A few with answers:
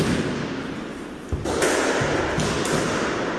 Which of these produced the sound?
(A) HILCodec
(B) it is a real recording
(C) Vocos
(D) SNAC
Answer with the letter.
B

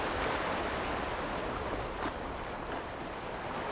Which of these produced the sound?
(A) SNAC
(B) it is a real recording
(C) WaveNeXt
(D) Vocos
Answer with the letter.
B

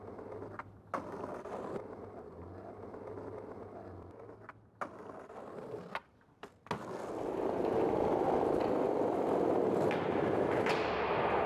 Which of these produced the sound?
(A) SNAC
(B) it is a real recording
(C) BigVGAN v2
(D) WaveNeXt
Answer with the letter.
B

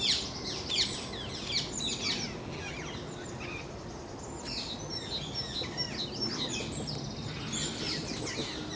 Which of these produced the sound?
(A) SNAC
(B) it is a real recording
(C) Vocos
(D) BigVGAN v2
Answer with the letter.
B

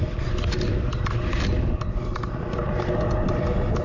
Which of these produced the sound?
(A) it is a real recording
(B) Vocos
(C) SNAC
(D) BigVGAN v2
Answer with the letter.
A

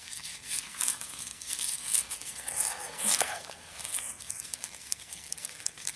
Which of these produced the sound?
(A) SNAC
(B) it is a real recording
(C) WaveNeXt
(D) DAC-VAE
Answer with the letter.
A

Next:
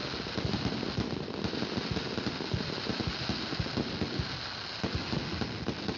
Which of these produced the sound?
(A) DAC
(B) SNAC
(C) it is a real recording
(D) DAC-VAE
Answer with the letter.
C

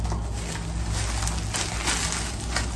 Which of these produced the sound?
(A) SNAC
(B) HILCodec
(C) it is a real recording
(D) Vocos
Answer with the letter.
C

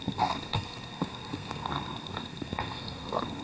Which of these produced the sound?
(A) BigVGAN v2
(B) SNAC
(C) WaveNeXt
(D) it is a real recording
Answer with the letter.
B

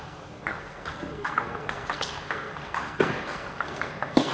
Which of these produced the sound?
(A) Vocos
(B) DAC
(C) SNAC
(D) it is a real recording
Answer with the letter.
C